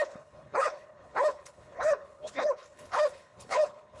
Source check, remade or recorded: remade